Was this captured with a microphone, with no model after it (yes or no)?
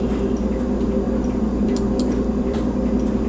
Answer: no